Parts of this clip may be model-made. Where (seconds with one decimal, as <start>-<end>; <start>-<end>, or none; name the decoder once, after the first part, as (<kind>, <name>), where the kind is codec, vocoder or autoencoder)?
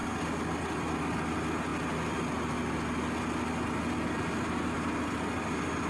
none